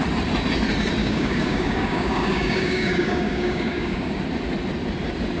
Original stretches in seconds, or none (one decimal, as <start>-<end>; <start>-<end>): 0.0-1.0; 4.2-5.4